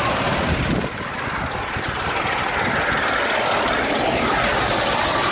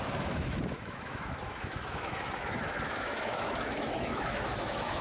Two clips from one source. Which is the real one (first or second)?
first